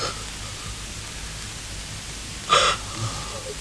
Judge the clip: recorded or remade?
recorded